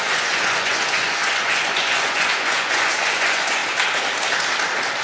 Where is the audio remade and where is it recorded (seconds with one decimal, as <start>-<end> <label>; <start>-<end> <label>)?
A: 0.0-3.6 remade; 3.6-5.0 recorded